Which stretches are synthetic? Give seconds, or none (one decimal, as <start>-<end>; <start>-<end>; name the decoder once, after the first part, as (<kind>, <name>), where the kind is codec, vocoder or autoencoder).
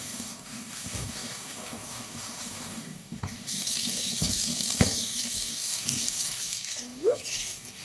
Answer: 0.0-7.8 (codec, DAC)